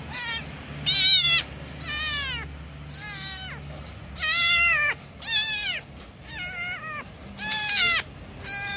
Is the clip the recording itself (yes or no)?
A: yes